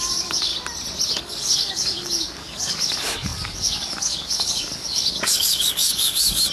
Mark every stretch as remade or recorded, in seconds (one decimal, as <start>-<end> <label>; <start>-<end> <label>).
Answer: 0.0-0.5 remade; 0.5-1.2 recorded; 1.2-6.5 remade